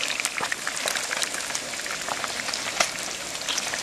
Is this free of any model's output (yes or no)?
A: yes